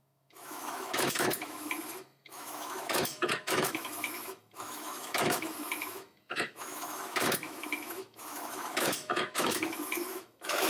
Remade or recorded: remade